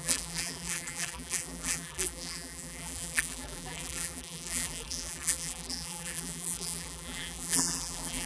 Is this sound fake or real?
fake